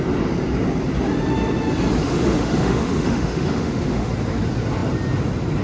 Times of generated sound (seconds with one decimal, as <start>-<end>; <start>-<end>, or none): 2.0-4.1